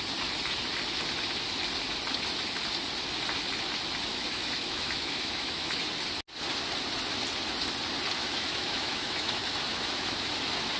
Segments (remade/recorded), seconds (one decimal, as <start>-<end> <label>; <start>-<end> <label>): 0.0-4.1 recorded; 4.1-5.8 remade; 5.8-8.2 recorded; 8.2-10.3 remade; 10.3-10.8 recorded